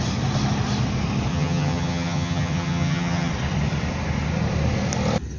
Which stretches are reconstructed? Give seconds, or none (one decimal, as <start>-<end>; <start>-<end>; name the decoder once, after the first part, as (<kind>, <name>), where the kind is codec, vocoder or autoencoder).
1.3-3.3 (vocoder, HiFi-GAN)